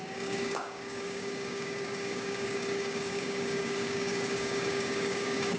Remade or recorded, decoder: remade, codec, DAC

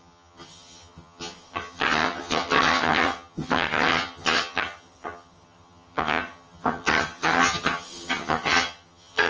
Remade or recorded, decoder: remade, vocoder, HiFi-GAN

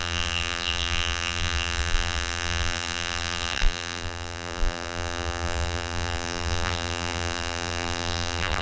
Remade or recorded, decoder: remade, vocoder, BigVGAN v2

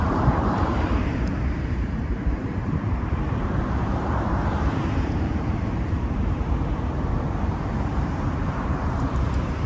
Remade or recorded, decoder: remade, vocoder, BigVGAN v2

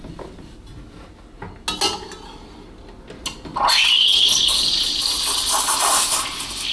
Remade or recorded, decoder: recorded